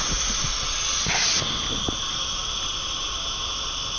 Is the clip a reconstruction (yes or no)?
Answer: no